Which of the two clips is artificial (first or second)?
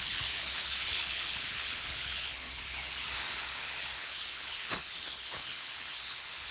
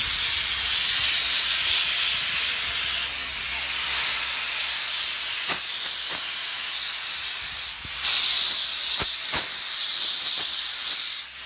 first